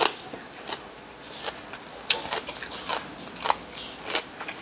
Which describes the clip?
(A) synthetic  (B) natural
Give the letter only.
B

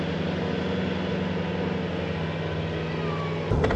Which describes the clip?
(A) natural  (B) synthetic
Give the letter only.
A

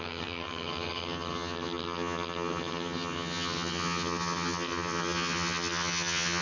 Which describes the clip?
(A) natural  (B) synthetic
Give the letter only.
B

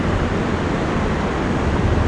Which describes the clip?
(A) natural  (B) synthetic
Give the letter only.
A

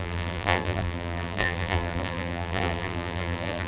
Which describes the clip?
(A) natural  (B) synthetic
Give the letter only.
B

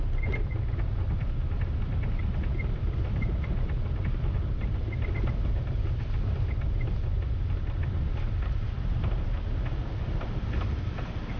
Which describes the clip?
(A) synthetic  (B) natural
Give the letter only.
B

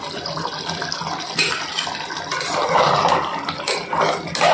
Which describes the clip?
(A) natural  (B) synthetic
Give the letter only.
A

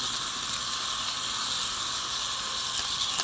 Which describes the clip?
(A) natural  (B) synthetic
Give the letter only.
A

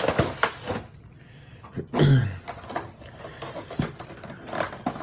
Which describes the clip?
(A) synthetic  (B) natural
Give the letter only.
B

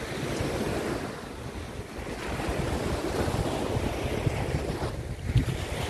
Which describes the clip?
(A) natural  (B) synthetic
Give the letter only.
A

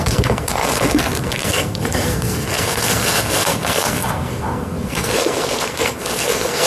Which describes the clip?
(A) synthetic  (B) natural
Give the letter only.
A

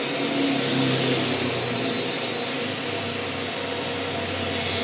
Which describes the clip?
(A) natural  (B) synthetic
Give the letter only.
A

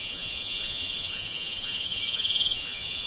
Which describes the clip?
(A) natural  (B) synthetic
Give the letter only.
B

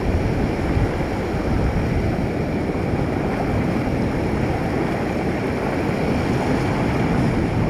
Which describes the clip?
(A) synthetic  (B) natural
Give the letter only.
B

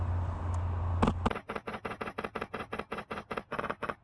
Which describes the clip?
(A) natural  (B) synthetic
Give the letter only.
A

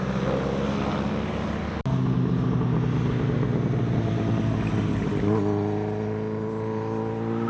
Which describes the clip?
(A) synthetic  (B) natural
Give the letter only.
B